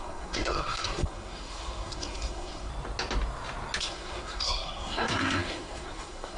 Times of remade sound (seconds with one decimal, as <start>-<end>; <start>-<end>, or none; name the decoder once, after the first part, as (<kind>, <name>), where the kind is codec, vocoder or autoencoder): 0.0-2.7 (codec, SNAC); 3.8-6.4